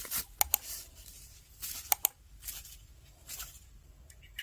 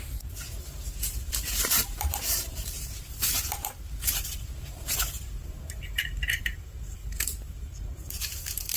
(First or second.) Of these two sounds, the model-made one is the second